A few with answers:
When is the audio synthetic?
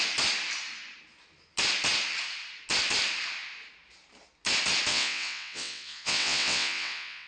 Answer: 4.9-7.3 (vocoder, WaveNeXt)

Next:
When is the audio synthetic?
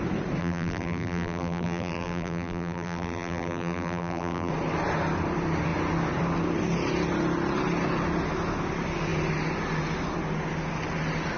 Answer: 0.4-4.5 (vocoder, BigVGAN v2)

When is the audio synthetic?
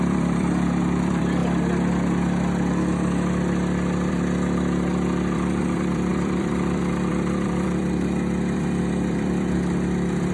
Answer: 0.0-1.4 (vocoder, BigVGAN v2); 4.1-10.3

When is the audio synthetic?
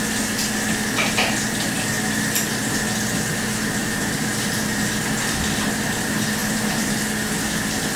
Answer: 3.8-4.9 (vocoder, BigVGAN v2); 6.4-7.0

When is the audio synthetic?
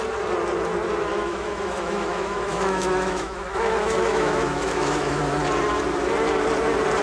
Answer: 1.1-5.2 (autoencoder, DAC-VAE)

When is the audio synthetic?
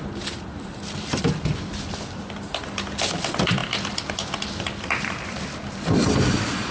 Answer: 0.0-6.7 (vocoder, BigVGAN v2)